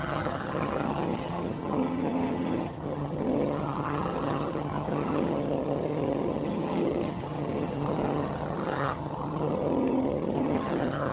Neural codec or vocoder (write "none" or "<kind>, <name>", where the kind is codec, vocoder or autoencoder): vocoder, HiFi-GAN